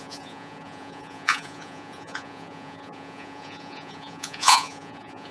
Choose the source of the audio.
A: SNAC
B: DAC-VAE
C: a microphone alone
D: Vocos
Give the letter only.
D